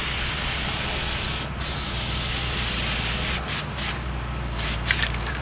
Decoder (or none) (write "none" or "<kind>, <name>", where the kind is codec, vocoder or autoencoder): none